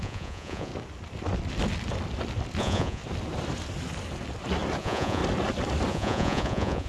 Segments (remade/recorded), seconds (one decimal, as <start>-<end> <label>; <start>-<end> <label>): 0.0-0.7 remade; 0.7-2.6 recorded; 2.6-3.0 remade; 3.0-4.8 recorded; 4.8-5.2 remade; 5.2-5.9 recorded; 5.9-6.9 remade